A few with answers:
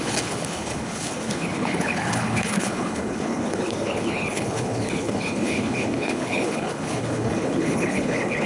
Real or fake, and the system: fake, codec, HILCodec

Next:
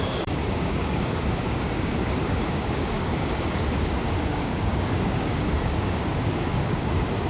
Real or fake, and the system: fake, codec, DAC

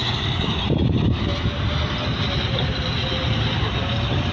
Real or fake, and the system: real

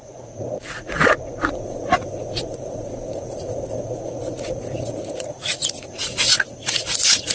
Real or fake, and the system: fake, vocoder, Vocos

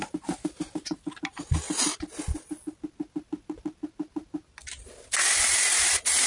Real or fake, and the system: real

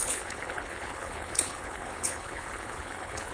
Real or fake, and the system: fake, codec, HILCodec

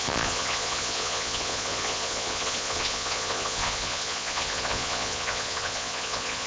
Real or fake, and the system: fake, vocoder, Vocos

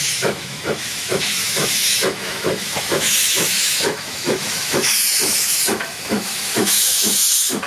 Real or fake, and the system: fake, autoencoder, DAC-VAE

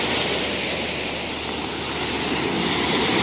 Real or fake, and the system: real